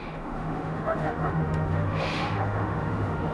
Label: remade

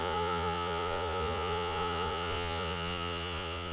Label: remade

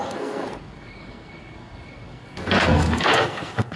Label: remade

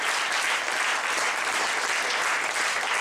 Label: recorded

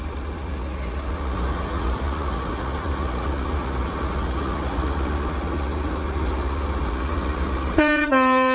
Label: remade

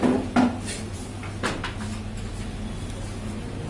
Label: recorded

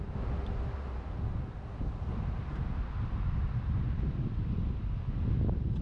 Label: recorded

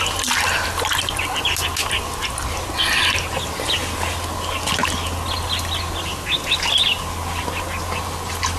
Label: recorded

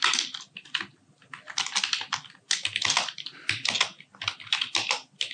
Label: recorded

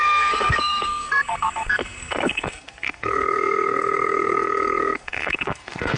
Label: remade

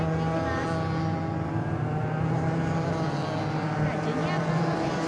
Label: recorded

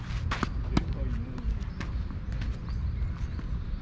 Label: recorded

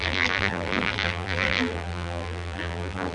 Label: remade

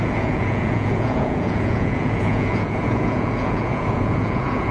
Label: remade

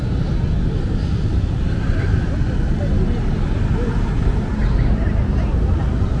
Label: recorded